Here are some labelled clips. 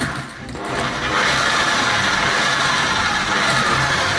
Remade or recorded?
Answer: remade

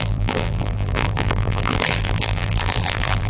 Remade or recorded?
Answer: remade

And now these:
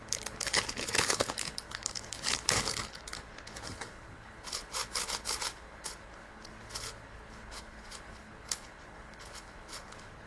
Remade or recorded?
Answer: remade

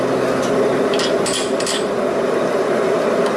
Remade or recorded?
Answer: recorded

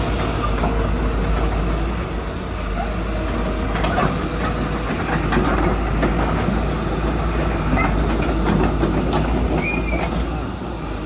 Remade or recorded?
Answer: recorded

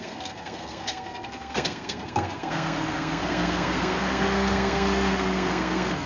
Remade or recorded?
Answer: remade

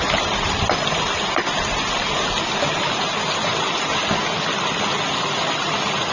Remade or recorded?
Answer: recorded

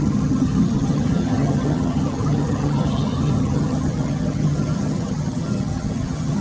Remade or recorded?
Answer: remade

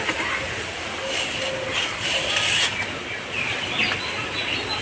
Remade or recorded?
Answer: recorded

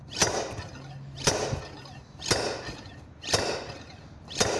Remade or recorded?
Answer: recorded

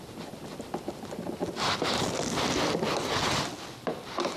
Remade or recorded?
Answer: recorded